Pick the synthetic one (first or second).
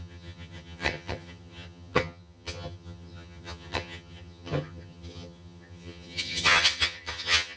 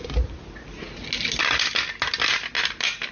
first